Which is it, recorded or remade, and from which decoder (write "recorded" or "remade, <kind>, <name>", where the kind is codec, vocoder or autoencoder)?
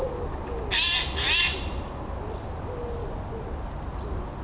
recorded